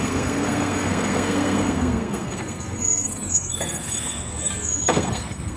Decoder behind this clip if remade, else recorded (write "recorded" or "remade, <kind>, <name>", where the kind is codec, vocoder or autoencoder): remade, codec, SNAC